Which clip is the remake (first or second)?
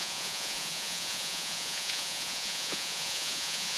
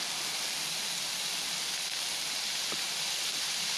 first